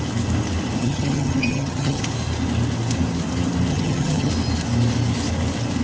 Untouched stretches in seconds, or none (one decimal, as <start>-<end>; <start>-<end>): 0.0-0.8; 2.0-3.7; 4.3-5.8